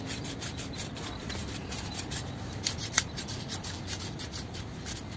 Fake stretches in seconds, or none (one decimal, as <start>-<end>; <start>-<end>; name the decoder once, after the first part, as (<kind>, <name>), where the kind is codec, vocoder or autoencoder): 1.4-2.0 (vocoder, BigVGAN v2); 2.8-4.7